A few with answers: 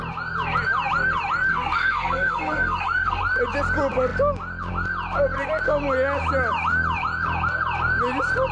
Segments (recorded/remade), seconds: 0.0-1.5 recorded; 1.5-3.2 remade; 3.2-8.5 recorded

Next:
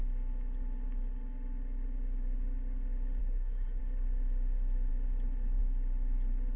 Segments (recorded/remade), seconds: 0.0-3.2 recorded; 3.2-3.8 remade; 3.8-6.6 recorded

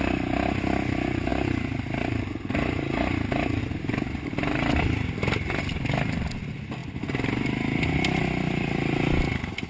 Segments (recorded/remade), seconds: 0.0-9.7 recorded

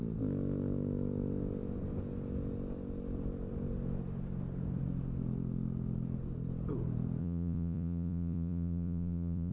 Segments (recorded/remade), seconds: 0.0-7.2 recorded; 7.2-9.5 remade